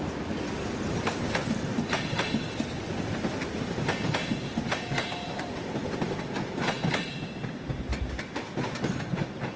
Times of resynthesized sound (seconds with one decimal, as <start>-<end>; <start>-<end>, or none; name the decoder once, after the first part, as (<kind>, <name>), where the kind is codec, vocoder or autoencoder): 1.7-3.6 (vocoder, BigVGAN v2); 4.2-5.7